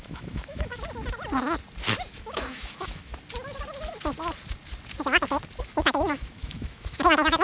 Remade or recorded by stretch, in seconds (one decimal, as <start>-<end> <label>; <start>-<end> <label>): 0.0-0.7 remade; 0.7-2.1 recorded; 2.1-3.1 remade; 3.1-5.6 recorded; 5.6-7.4 remade